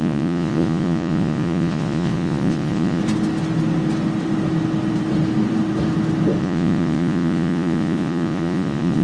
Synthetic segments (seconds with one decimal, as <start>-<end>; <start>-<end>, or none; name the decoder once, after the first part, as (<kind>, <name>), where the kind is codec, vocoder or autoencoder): 0.0-3.0 (vocoder, Vocos); 6.4-9.0